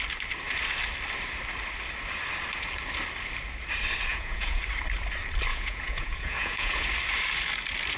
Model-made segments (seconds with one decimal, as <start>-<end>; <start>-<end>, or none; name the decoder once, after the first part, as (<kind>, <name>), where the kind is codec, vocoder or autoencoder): 4.1-4.6 (vocoder, Vocos); 5.5-6.9